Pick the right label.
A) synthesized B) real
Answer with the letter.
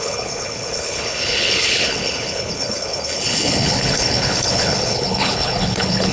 A